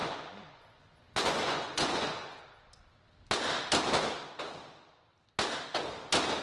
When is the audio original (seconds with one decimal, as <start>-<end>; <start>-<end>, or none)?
2.4-6.4